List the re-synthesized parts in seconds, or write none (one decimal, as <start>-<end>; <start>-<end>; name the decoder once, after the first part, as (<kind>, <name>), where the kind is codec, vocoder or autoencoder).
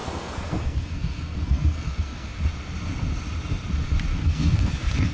0.0-2.4 (codec, SNAC); 4.1-5.1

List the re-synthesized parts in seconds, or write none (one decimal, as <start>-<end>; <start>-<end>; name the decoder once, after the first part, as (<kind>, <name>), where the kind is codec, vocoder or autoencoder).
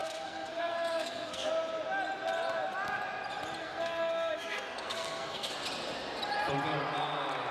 0.0-1.5 (codec, SNAC); 3.6-5.5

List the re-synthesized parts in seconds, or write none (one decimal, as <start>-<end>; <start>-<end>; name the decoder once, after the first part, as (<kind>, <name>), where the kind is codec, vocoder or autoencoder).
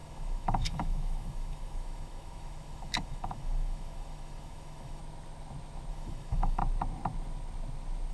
0.0-5.0 (autoencoder, DAC-VAE); 5.9-6.6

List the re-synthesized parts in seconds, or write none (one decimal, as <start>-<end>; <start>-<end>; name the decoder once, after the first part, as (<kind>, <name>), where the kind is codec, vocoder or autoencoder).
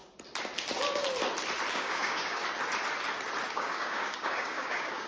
1.7-2.4 (codec, DAC); 3.5-5.1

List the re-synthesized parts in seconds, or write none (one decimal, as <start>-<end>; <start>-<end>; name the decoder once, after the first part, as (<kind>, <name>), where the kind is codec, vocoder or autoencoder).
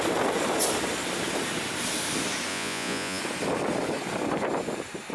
2.5-3.2 (vocoder, Vocos)